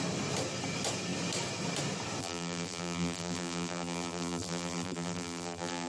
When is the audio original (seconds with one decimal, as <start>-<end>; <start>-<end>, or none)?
0.0-2.2